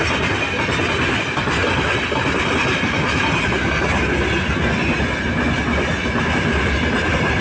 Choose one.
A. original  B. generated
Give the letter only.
A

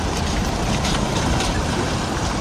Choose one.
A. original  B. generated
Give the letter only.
B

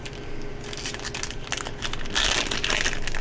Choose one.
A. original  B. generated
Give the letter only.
A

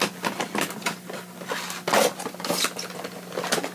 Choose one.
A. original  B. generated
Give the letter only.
A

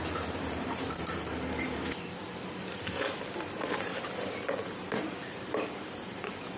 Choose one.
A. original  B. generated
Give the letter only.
B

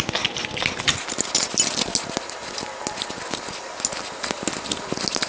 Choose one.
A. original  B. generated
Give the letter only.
A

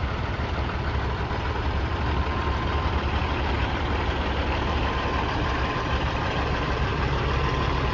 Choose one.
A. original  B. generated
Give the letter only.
B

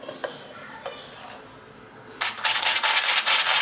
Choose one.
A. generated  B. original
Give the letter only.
B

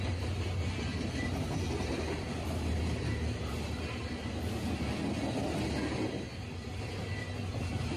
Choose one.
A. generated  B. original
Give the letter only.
B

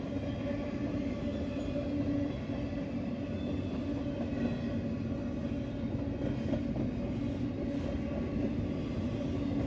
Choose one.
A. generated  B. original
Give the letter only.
B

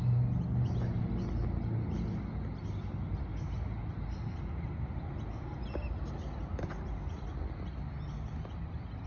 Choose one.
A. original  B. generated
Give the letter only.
A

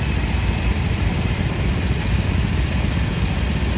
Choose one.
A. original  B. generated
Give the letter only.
A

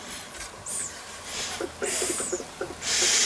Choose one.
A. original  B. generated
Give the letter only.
B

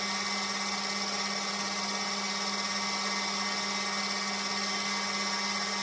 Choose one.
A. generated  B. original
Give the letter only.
B